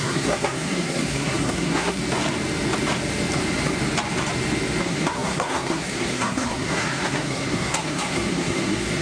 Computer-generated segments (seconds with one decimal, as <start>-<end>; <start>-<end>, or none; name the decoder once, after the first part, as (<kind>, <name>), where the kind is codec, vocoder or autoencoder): 0.0-2.0 (codec, SNAC); 4.8-9.0